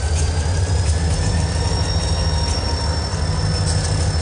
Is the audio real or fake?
real